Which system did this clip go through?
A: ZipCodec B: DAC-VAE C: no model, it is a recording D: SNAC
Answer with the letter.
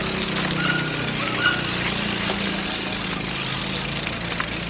C